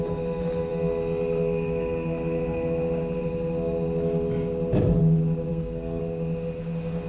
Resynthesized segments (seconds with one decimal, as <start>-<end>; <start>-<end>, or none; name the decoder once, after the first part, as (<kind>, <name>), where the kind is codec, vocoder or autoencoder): 5.5-6.0 (codec, SNAC)